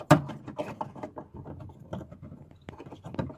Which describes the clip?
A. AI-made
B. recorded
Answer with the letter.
B